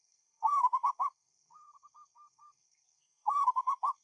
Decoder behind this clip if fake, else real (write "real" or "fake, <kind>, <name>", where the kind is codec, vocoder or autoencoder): fake, codec, SNAC